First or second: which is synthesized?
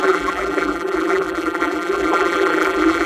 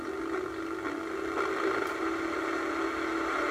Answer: first